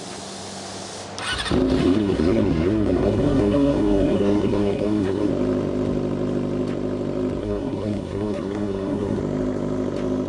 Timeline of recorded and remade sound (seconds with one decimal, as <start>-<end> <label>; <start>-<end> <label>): 0.0-1.8 recorded; 1.8-5.3 remade; 5.3-7.4 recorded; 7.4-9.2 remade; 9.2-10.3 recorded